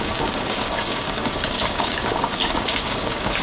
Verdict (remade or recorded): remade